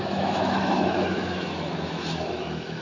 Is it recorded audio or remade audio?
remade